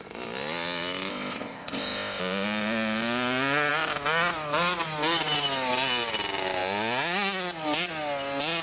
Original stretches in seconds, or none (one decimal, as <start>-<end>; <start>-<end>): 0.0-1.1; 2.2-8.6